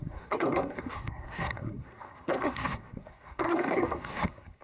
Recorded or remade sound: remade